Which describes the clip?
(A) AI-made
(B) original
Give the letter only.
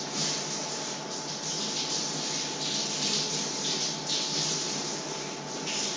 B